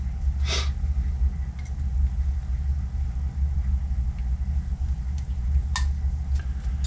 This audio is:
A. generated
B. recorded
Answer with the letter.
B